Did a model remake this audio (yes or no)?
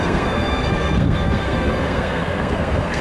yes